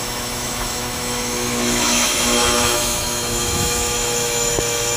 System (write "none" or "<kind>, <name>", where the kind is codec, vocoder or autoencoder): autoencoder, DAC-VAE